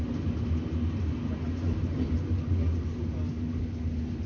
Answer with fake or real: real